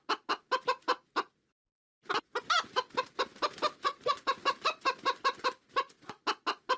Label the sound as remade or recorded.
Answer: recorded